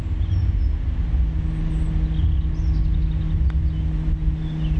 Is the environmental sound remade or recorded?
recorded